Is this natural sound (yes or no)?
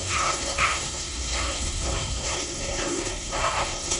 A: no